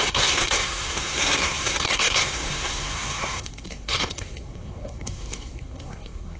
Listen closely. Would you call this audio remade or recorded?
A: remade